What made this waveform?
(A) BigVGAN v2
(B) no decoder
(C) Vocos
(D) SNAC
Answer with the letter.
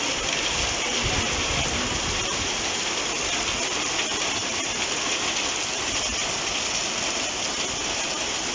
B